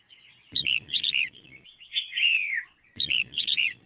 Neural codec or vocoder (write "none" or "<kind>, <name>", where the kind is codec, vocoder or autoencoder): vocoder, Vocos